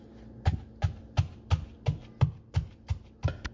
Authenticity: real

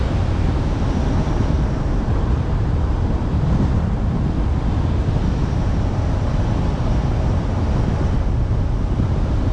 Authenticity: real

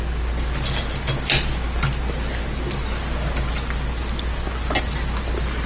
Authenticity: real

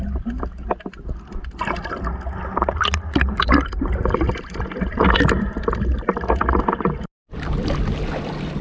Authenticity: real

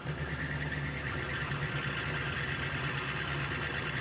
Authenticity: real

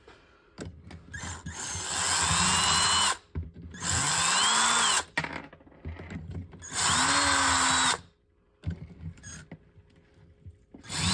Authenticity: real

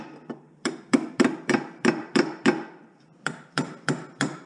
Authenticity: fake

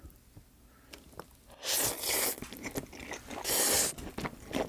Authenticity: real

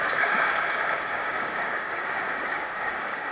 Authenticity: fake